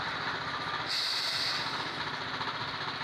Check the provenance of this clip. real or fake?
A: real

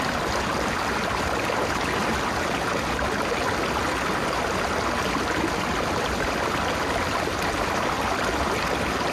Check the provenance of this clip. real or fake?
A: real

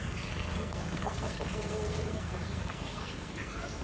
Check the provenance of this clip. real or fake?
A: fake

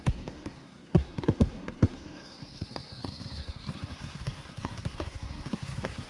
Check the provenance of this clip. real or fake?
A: fake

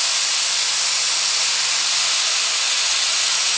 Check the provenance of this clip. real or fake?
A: real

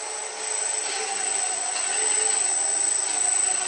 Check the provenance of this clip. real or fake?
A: real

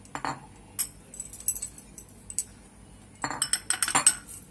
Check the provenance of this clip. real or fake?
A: real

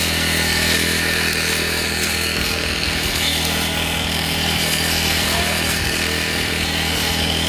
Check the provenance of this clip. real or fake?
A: fake